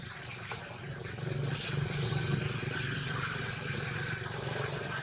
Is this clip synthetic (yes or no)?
no